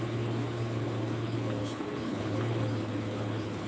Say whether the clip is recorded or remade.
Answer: remade